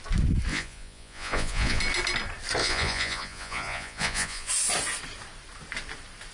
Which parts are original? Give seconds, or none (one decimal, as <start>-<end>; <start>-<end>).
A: 0.0-0.5; 1.8-2.6; 4.5-6.3